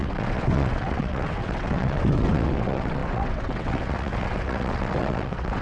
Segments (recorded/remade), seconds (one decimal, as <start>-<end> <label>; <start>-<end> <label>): 0.0-5.6 remade